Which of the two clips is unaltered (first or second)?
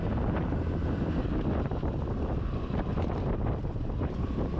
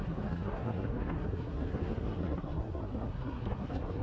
first